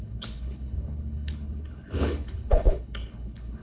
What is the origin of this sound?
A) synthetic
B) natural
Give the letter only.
A